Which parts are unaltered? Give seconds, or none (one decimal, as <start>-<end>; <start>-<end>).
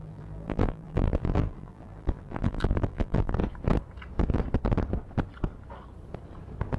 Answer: 3.4-6.8